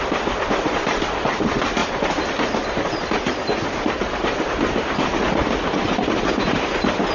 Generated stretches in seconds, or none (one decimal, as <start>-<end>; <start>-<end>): none